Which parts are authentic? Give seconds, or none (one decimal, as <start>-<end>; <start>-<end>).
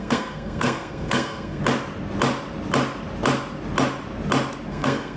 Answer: 1.6-4.7